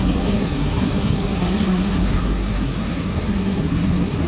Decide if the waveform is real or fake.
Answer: fake